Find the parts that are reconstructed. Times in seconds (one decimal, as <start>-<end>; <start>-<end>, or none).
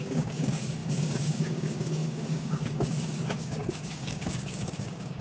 0.0-5.2